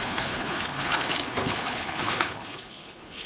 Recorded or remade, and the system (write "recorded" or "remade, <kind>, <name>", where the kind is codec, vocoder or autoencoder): remade, codec, HILCodec